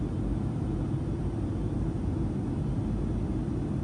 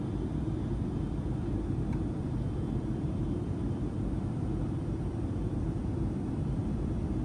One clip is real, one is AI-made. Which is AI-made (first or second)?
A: second